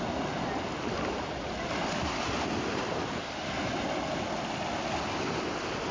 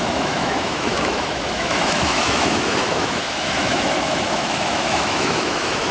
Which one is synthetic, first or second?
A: second